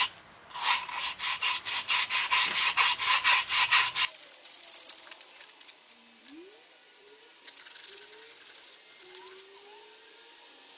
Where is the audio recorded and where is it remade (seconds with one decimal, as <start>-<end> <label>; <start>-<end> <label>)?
0.0-10.8 recorded